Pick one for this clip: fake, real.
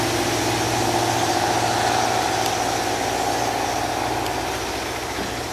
real